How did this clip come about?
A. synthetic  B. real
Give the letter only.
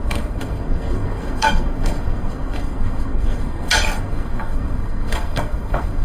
A